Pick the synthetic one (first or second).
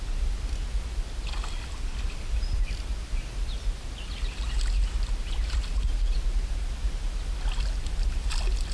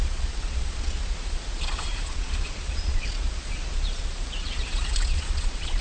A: second